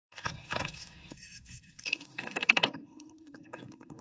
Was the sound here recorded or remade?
remade